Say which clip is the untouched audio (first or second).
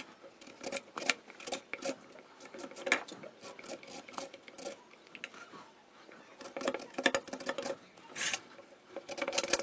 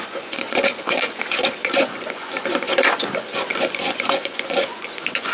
first